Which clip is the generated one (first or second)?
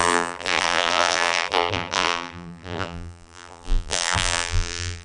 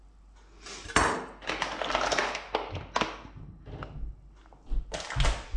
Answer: first